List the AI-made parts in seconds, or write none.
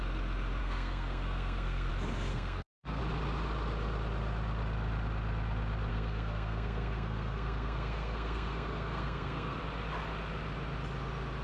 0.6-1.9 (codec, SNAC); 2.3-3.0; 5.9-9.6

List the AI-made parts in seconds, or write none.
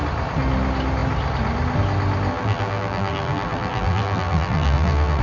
2.3-5.2 (vocoder, BigVGAN v2)